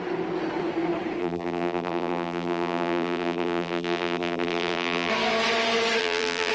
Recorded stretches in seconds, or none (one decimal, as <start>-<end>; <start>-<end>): 0.0-1.2; 5.1-6.0